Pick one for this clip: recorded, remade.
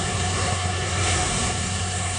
remade